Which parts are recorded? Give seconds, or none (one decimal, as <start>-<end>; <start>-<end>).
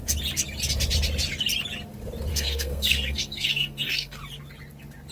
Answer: 0.0-2.3; 4.2-5.1